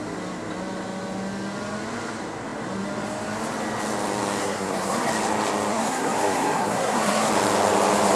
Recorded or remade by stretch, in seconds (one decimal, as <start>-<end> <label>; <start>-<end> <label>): 0.0-4.4 recorded; 4.4-5.1 remade; 5.1-5.7 recorded; 5.7-7.3 remade; 7.3-8.1 recorded